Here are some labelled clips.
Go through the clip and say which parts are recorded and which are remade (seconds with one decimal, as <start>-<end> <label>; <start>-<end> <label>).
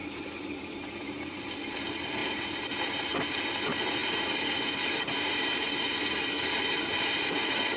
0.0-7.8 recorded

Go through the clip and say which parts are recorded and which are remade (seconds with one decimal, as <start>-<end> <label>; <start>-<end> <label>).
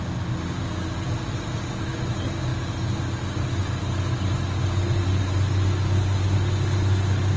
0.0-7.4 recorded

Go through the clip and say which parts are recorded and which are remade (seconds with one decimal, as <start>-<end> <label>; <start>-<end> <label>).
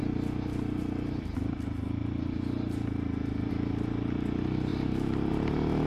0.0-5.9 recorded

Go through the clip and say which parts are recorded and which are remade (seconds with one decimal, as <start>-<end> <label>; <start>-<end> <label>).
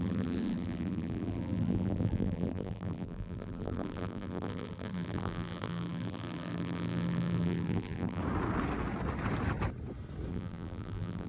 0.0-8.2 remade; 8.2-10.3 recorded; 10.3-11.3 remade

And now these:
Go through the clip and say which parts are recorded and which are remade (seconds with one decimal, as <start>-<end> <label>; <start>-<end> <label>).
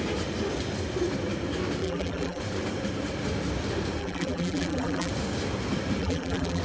0.0-1.8 recorded; 1.8-2.4 remade; 2.4-4.0 recorded; 4.0-5.1 remade; 5.1-6.0 recorded; 6.0-6.6 remade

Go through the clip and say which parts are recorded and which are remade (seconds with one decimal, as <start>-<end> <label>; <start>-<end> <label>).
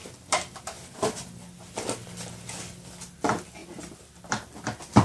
0.0-5.0 remade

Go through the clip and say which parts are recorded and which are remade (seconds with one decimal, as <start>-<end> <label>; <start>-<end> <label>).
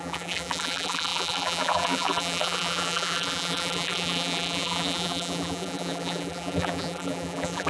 0.0-7.7 remade